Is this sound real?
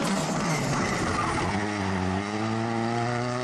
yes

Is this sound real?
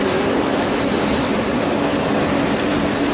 yes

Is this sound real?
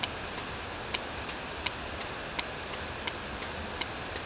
yes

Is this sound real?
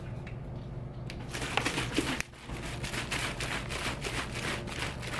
yes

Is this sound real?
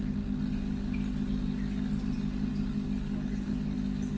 yes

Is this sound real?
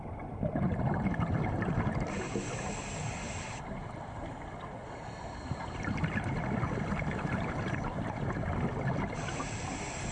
yes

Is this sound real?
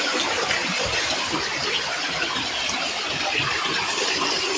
yes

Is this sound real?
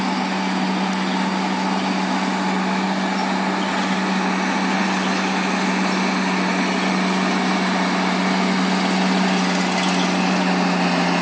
yes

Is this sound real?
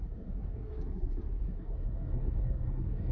no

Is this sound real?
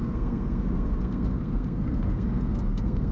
no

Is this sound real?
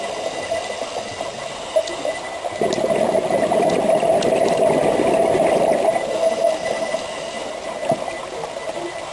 yes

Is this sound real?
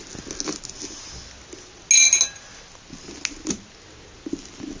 yes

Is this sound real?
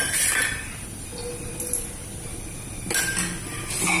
yes